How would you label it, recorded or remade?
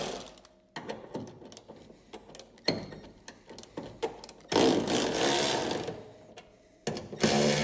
recorded